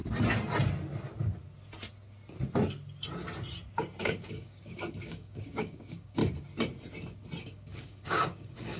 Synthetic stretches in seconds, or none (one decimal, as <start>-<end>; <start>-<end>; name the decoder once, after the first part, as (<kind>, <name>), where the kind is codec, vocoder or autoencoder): 4.0-6.2 (codec, DAC); 7.4-8.8